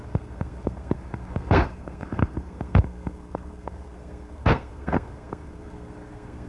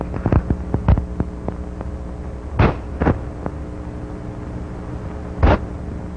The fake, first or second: first